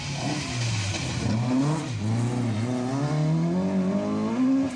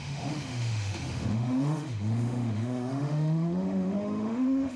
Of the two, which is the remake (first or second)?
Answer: second